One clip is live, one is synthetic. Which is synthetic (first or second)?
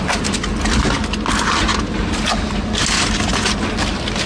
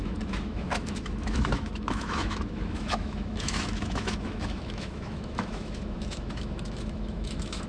second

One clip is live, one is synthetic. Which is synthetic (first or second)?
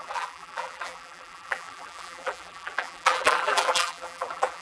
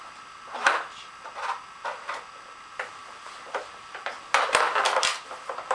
first